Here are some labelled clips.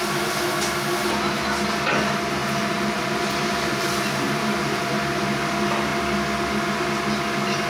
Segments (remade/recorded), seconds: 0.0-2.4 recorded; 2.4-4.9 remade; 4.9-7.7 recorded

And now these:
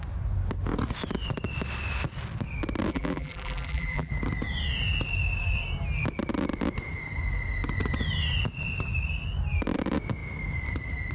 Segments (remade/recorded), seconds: 0.0-2.9 recorded; 2.9-4.1 remade; 4.1-11.1 recorded

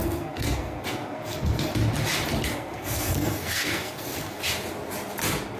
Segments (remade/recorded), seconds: 0.0-1.7 remade; 1.7-2.5 recorded; 2.5-4.4 remade; 4.4-5.6 recorded

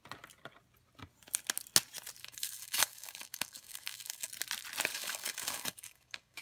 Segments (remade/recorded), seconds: 0.0-2.2 recorded; 2.2-4.3 remade; 4.3-4.9 recorded; 4.9-6.4 remade

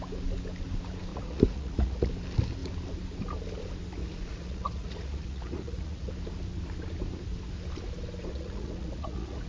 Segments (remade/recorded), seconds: 0.0-1.1 recorded; 1.1-2.1 remade; 2.1-4.0 recorded; 4.0-6.1 remade; 6.1-8.3 recorded; 8.3-9.5 remade